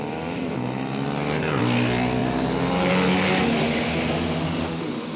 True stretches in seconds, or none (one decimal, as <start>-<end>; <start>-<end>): 0.0-3.3